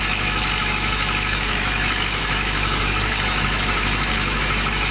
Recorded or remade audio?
remade